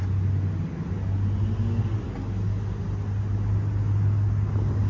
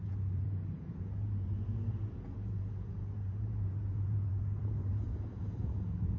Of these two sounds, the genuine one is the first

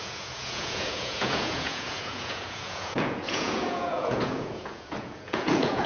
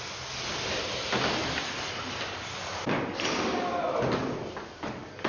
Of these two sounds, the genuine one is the second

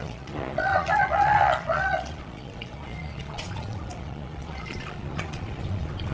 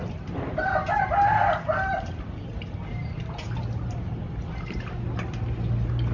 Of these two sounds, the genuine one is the second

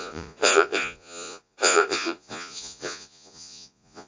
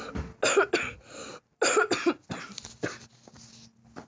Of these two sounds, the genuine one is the second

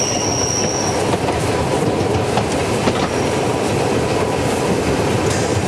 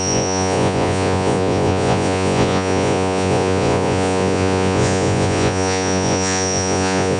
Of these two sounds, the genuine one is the first